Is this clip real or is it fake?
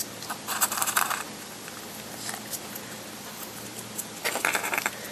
fake